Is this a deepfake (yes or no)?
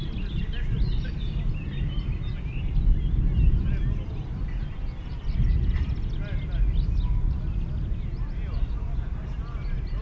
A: no